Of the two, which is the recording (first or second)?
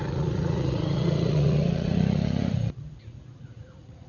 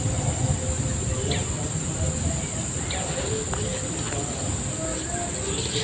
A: second